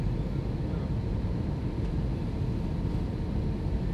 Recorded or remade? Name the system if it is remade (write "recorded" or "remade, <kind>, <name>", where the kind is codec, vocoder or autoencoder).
recorded